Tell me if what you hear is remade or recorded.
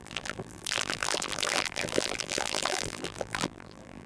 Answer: remade